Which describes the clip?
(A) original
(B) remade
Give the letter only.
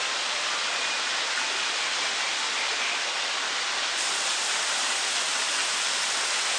A